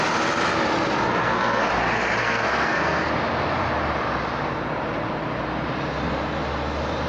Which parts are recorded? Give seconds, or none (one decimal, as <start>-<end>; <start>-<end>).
0.0-1.2; 1.7-2.2; 3.1-7.1